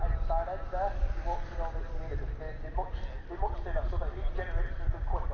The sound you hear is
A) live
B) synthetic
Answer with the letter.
A